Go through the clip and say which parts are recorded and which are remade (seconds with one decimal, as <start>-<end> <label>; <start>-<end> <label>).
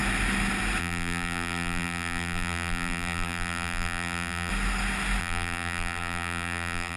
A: 0.0-0.8 recorded; 0.8-4.5 remade; 4.5-5.2 recorded; 5.2-7.0 remade